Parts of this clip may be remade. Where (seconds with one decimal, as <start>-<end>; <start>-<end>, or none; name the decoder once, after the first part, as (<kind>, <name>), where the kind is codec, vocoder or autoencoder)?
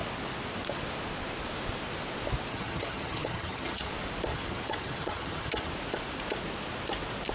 2.5-3.9 (vocoder, HiFi-GAN); 4.3-5.7